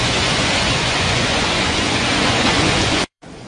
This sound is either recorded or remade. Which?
remade